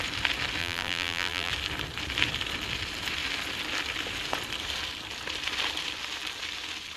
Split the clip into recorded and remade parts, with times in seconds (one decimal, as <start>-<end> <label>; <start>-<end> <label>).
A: 0.0-0.6 recorded; 0.6-1.5 remade; 1.5-7.0 recorded